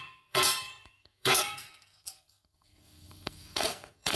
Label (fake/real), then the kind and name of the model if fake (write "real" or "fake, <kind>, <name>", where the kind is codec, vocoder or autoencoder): fake, codec, SNAC